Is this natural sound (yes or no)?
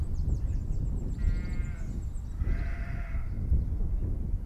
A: yes